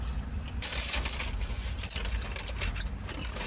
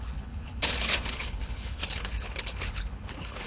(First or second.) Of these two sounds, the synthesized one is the second